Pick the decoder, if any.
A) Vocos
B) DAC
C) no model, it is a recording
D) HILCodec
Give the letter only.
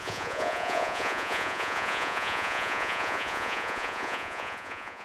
A